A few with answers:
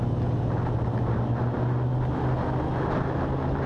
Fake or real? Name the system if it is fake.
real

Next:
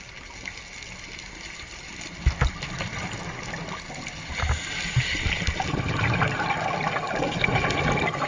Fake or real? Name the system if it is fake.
real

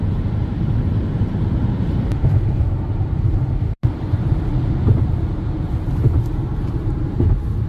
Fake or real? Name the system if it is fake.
fake, vocoder, BigVGAN v2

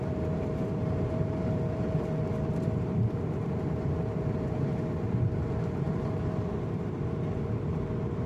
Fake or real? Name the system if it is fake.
fake, vocoder, BigVGAN v2